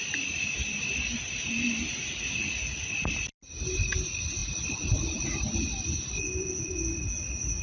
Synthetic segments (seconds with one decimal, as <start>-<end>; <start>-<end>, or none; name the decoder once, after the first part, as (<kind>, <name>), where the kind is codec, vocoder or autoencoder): none